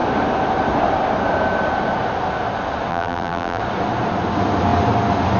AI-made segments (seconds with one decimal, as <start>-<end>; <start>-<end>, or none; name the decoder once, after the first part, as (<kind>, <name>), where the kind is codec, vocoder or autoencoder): 2.9-3.6 (vocoder, BigVGAN v2)